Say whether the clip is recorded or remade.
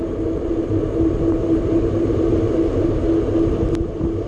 remade